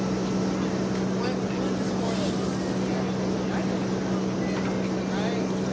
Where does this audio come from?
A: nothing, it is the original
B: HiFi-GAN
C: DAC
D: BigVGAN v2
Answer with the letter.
A